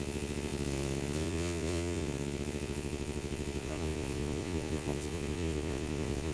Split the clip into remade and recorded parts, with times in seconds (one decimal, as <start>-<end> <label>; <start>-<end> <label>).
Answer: 0.0-6.3 remade